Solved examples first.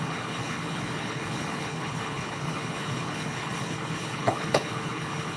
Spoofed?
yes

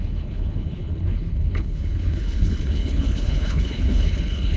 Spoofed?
yes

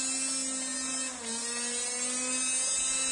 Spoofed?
no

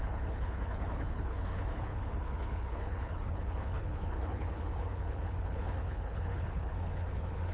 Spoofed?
yes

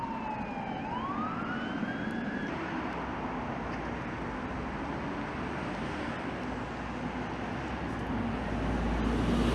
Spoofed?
no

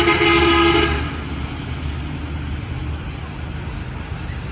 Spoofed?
no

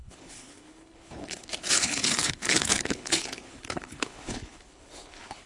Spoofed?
yes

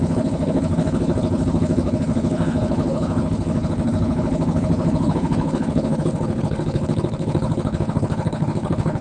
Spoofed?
yes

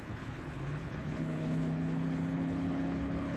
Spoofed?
yes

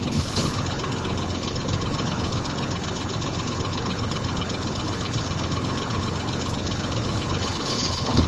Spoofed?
yes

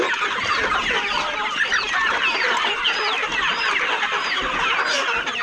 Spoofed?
no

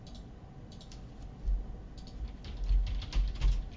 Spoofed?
no